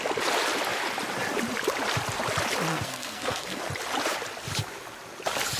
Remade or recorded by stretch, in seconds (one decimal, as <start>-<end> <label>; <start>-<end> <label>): 0.0-2.7 recorded; 2.7-3.7 remade; 3.7-5.6 recorded